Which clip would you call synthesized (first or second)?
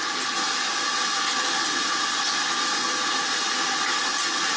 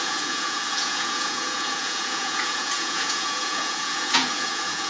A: second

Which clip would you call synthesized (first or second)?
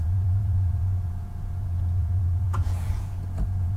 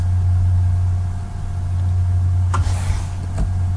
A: first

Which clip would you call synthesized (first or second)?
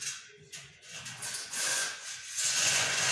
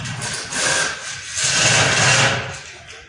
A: first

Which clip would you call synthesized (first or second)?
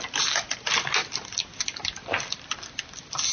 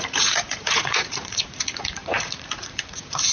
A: second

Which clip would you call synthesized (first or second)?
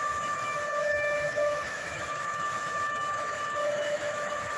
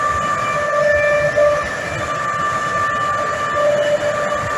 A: first